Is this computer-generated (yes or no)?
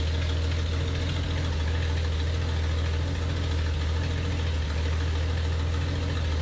no